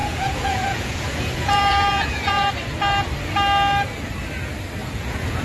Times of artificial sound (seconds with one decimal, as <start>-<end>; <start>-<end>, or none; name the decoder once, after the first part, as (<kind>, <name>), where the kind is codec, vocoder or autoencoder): 0.0-2.5 (vocoder, Vocos); 4.8-5.4